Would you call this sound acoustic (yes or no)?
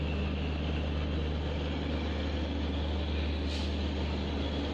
yes